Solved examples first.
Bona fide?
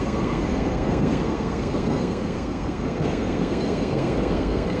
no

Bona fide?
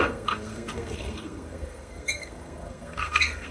no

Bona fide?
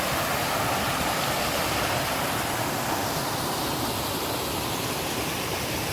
yes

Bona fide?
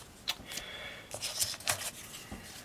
yes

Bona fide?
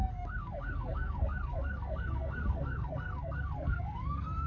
no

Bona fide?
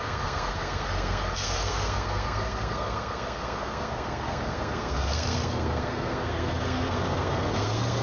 no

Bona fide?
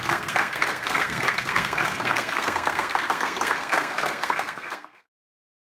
no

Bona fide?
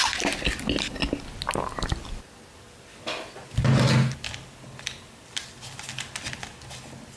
yes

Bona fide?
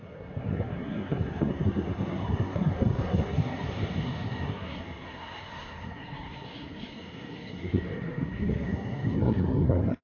no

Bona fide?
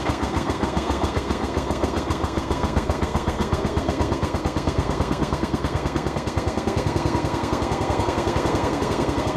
no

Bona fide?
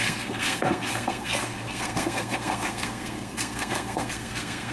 no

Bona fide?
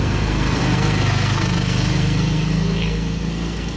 no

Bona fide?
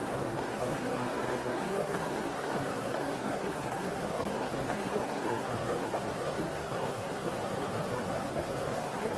no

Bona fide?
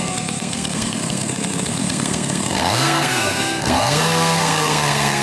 no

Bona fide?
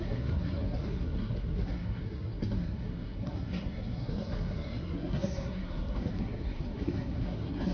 no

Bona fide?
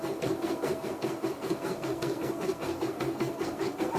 no